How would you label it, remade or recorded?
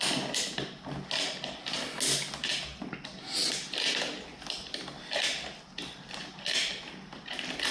recorded